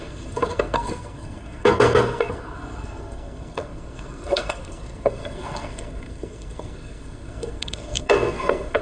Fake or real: fake